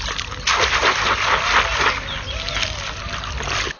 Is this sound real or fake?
real